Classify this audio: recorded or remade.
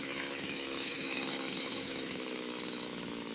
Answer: remade